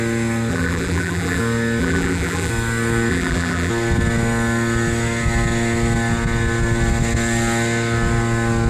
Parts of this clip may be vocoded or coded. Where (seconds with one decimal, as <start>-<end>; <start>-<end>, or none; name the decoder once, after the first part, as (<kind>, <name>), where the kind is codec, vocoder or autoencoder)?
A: 0.5-1.4 (vocoder, BigVGAN v2); 1.8-2.5; 3.1-3.7